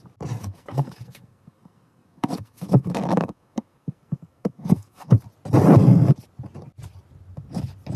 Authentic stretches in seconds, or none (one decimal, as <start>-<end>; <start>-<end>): 0.0-0.4; 5.2-8.0